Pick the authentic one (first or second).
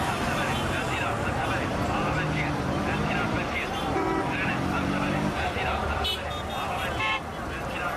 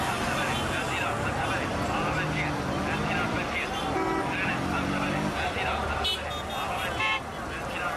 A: second